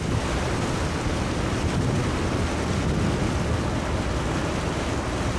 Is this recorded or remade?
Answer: recorded